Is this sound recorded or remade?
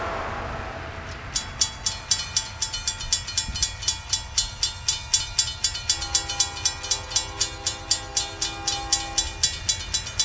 recorded